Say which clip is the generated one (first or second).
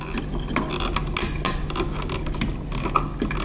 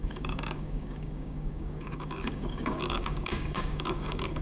second